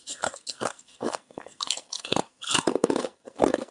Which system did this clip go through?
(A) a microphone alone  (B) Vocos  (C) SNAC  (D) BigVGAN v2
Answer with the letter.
C